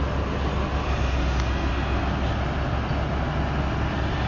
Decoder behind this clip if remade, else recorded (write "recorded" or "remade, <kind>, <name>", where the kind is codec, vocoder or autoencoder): recorded